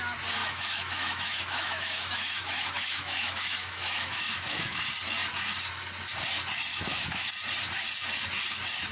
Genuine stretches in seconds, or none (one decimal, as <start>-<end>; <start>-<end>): 0.0-0.4; 4.8-6.7; 7.3-8.9